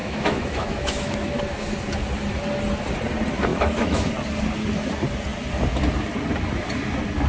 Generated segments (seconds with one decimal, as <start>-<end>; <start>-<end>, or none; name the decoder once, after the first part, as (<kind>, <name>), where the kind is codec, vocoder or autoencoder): 0.0-1.4 (autoencoder, DAC-VAE); 3.5-4.1